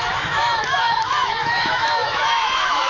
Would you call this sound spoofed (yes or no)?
yes